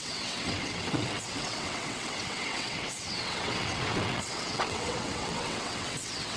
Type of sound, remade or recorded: remade